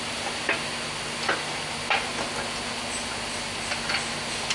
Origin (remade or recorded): recorded